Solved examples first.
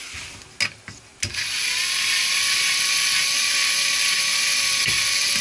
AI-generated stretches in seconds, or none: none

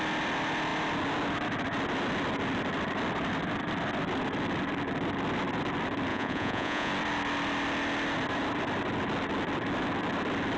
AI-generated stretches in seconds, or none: 6.1-6.9 (vocoder, Vocos)

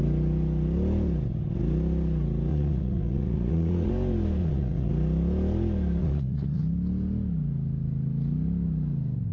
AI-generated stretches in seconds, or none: 2.5-3.9 (vocoder, Vocos); 4.4-4.9; 6.0-6.6

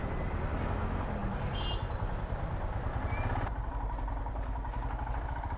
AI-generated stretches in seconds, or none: none